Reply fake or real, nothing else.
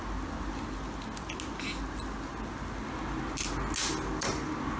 real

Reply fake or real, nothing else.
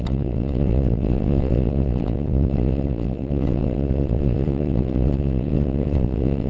fake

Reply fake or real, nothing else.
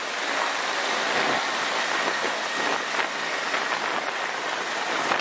real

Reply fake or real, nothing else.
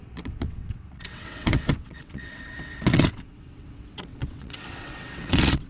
fake